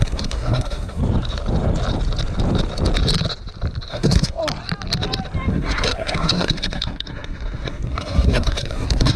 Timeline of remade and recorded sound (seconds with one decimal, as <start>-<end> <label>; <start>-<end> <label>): 0.0-1.0 remade; 1.0-3.9 recorded; 3.9-4.4 remade; 4.4-5.5 recorded; 5.5-9.2 remade